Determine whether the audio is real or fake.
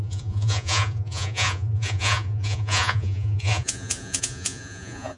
fake